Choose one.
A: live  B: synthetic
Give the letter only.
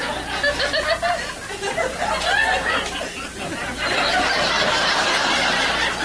A